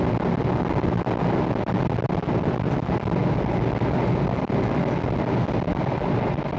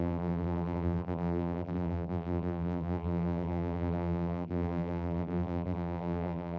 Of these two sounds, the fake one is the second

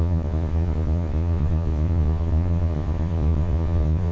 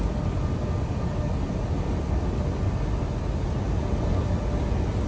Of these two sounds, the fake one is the first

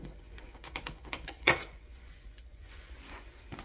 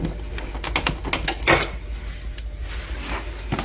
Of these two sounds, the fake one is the first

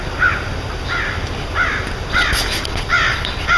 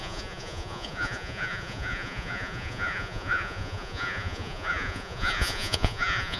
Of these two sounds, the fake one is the second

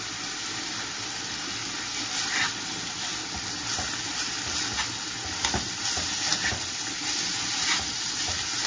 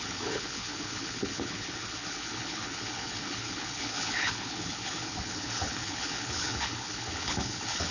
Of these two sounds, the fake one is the second